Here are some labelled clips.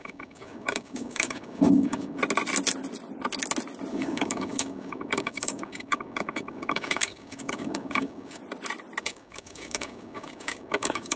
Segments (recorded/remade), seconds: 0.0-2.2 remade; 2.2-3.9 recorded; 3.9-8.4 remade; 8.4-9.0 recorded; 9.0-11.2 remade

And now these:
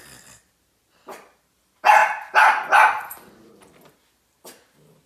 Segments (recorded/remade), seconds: 0.0-5.1 recorded